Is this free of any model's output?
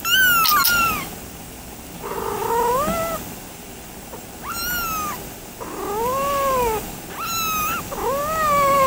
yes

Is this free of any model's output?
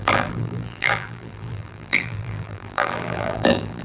no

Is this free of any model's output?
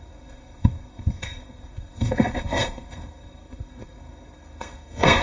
no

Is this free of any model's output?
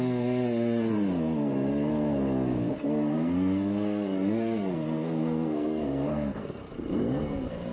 no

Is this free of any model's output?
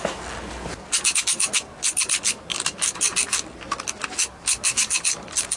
yes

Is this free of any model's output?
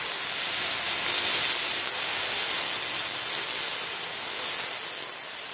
yes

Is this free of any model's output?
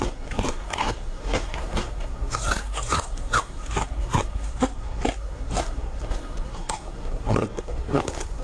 no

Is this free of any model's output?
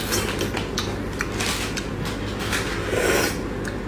yes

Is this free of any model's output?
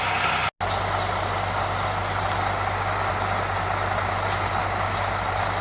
yes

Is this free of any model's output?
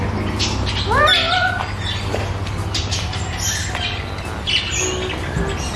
yes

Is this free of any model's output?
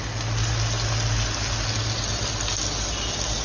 yes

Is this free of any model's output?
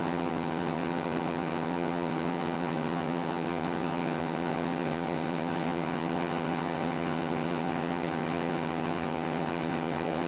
no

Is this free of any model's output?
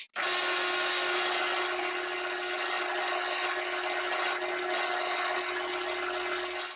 yes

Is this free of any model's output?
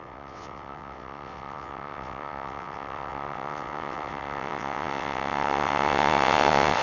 no